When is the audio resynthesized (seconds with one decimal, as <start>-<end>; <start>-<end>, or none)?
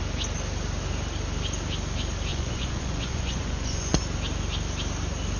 2.3-4.0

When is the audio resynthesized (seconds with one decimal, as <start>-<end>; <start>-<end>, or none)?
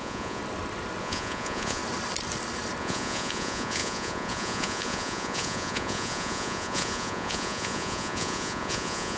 0.0-0.4; 1.0-1.8; 2.8-9.2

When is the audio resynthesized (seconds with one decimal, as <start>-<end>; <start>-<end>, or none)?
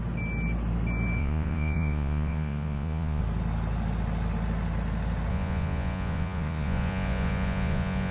1.2-3.2; 5.3-8.1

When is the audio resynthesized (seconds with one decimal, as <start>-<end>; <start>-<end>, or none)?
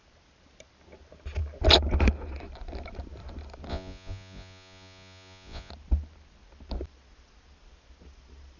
3.7-5.7